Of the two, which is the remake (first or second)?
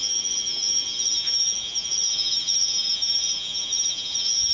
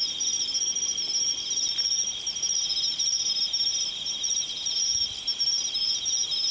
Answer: first